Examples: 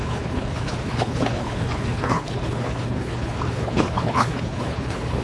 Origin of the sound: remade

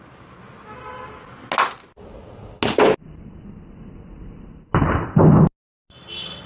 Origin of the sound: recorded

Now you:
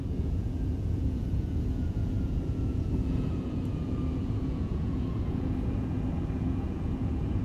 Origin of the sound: remade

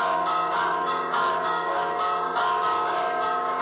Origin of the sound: remade